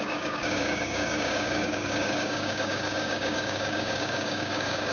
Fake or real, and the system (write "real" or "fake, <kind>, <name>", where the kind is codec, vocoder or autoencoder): fake, codec, DAC